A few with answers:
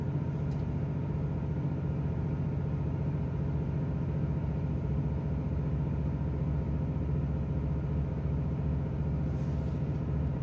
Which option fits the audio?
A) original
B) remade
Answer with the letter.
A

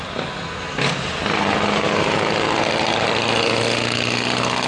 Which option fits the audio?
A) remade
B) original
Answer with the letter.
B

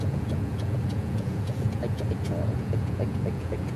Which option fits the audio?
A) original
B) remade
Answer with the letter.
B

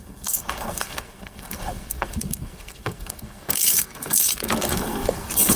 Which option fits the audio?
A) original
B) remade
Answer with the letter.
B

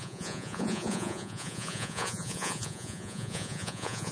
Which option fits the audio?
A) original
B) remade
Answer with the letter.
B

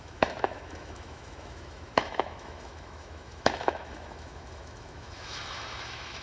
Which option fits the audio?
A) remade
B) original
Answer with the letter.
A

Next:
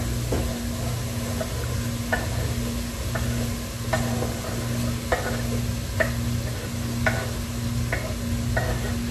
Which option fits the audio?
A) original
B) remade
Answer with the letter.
A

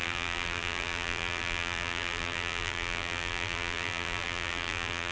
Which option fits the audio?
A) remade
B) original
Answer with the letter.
A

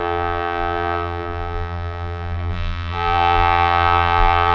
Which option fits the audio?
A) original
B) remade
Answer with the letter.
B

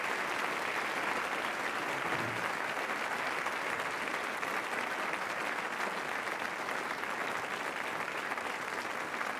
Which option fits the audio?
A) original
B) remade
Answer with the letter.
A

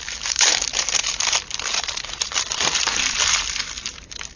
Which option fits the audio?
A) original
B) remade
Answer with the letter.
B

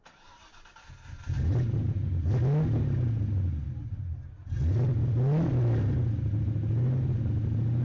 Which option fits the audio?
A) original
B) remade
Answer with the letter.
A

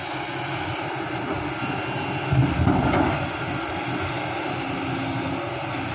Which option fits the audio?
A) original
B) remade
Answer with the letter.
A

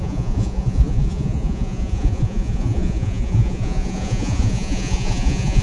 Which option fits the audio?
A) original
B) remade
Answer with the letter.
B